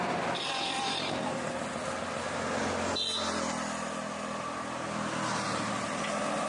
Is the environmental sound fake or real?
real